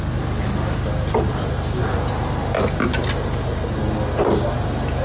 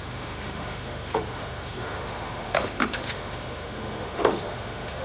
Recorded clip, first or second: first